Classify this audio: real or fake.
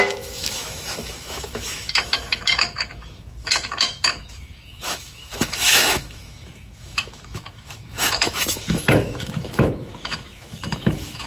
fake